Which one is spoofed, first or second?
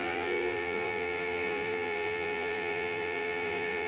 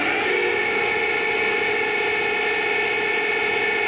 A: first